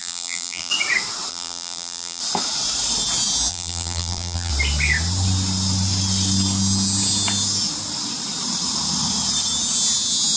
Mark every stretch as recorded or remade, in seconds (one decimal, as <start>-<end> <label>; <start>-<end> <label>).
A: 0.0-0.7 remade; 0.7-1.3 recorded; 1.3-2.2 remade; 2.2-3.5 recorded; 3.5-4.5 remade; 4.5-10.4 recorded